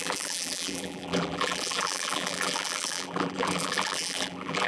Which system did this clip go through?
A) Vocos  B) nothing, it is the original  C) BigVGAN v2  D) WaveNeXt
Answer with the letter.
C